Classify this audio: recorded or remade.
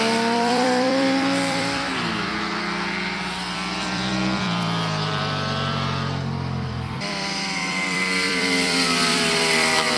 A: remade